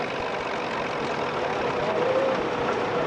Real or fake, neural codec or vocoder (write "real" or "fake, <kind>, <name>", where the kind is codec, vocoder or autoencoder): real